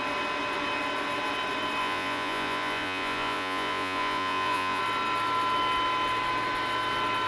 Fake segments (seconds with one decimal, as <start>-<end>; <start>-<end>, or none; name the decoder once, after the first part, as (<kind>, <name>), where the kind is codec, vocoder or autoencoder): 1.8-4.8 (vocoder, Vocos)